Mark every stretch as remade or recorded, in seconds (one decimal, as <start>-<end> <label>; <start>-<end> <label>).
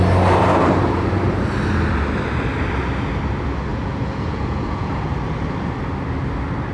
0.0-3.7 recorded; 3.7-5.1 remade; 5.1-6.7 recorded